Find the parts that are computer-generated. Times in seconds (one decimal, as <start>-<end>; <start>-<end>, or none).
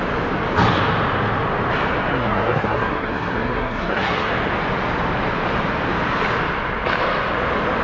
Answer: 2.1-4.3